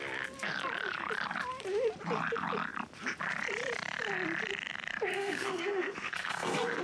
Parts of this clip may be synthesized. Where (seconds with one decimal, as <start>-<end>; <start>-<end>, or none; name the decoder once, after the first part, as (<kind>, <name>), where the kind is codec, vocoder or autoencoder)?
5.1-6.8 (codec, SNAC)